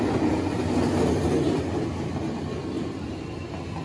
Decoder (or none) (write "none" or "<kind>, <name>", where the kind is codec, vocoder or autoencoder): none